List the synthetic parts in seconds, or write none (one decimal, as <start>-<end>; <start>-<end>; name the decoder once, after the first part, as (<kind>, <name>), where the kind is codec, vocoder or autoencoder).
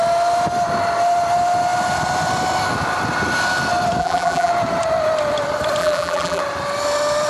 4.0-4.5 (vocoder, BigVGAN v2); 5.8-6.4